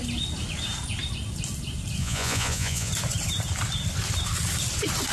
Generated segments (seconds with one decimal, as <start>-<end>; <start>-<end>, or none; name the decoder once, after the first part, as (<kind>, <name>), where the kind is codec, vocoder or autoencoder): 2.0-2.9 (vocoder, Vocos)